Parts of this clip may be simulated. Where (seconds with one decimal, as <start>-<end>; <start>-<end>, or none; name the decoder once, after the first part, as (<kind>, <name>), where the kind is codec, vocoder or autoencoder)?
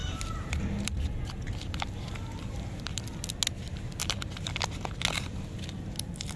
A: 0.0-2.9 (vocoder, BigVGAN v2); 4.0-4.5